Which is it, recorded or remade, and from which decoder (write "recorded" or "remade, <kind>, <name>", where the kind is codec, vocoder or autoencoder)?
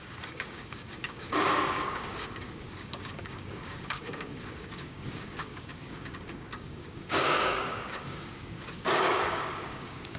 remade, codec, DAC